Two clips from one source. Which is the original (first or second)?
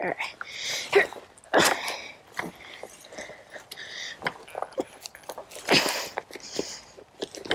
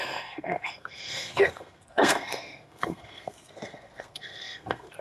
first